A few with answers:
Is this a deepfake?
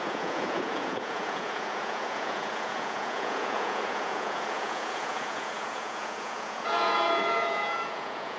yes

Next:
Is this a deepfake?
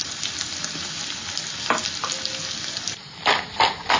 no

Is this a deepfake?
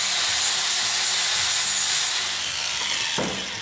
no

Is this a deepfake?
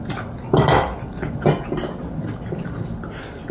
no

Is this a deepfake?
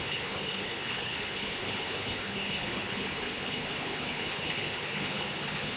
yes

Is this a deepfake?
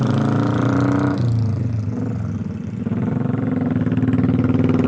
no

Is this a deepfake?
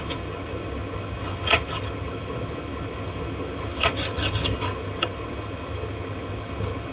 yes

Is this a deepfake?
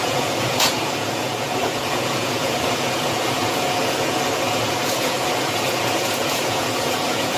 yes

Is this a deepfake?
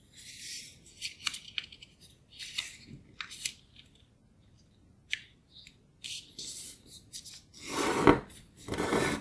no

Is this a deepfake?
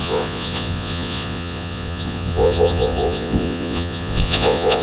yes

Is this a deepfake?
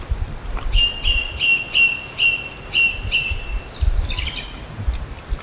no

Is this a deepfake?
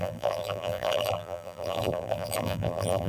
yes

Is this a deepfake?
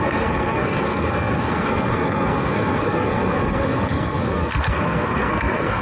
yes